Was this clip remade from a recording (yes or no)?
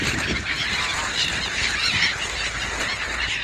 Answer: yes